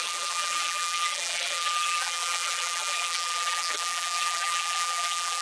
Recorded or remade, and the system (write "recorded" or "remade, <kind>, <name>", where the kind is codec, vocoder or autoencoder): remade, vocoder, BigVGAN v2